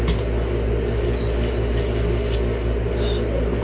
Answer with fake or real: real